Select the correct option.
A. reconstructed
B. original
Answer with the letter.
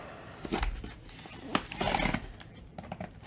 B